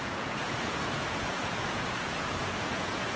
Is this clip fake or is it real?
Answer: fake